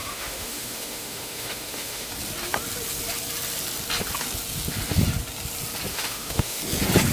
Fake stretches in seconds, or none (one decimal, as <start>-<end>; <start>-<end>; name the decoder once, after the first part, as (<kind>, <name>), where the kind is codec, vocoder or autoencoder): 0.0-2.1 (autoencoder, DAC-VAE); 5.9-6.6